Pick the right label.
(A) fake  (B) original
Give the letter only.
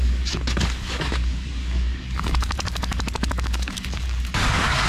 A